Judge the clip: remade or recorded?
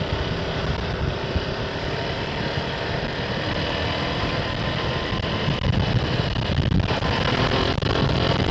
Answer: recorded